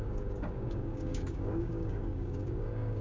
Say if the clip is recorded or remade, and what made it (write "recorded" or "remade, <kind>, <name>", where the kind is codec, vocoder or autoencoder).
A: remade, codec, DAC